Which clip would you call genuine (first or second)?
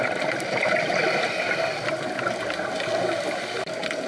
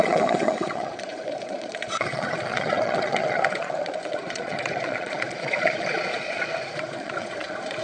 first